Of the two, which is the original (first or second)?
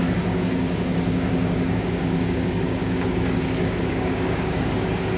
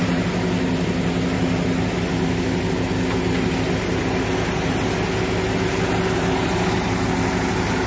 second